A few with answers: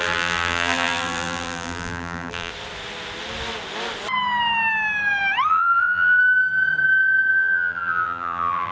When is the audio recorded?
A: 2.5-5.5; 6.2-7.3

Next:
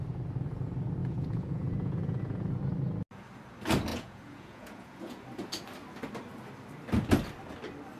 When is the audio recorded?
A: 0.0-1.0; 2.6-3.9; 5.2-8.0

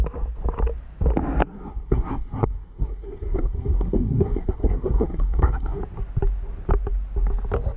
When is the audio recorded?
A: 0.0-1.4; 5.8-7.8

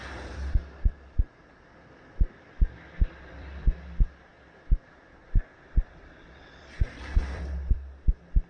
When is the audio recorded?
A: 4.3-6.0

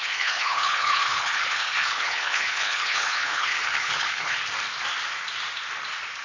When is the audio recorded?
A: 4.4-6.2